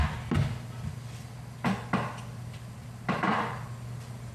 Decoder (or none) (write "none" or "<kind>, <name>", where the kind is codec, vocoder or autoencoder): none